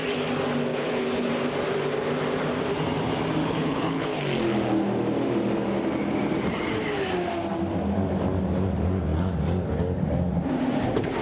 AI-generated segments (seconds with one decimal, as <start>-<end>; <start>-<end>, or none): 0.7-1.3; 3.4-4.2